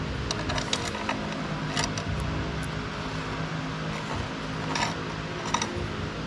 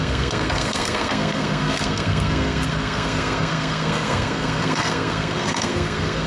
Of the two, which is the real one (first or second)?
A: first